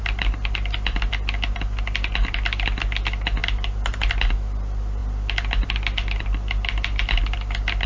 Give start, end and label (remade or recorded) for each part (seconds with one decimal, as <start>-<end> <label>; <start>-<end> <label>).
0.0-3.4 recorded; 3.4-4.1 remade; 4.1-5.0 recorded; 5.0-7.1 remade; 7.1-7.9 recorded